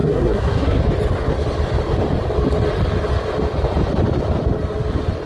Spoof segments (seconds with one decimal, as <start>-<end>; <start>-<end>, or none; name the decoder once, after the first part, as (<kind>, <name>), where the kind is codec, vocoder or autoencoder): 0.0-0.8 (codec, SNAC)